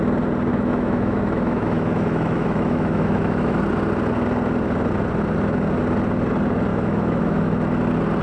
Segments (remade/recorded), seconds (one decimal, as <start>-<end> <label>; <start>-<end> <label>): 0.0-0.5 recorded; 0.5-3.6 remade; 3.6-6.7 recorded; 6.7-7.5 remade; 7.5-8.2 recorded